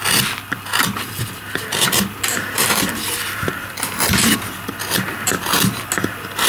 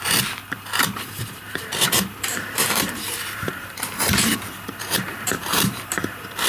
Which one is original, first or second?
first